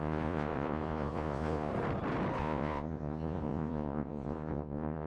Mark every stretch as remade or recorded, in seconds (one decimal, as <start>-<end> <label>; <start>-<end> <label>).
0.0-1.7 remade; 1.7-2.4 recorded; 2.4-5.1 remade